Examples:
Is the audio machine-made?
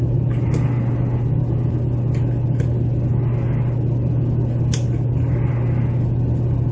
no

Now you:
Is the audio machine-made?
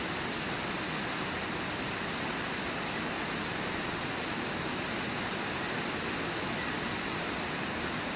no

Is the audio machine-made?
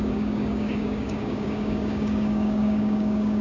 yes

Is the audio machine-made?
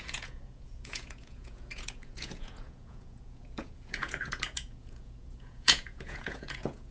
yes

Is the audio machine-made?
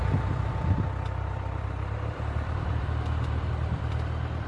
yes